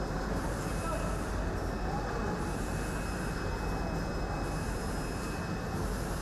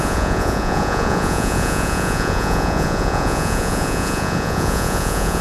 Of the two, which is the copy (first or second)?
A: second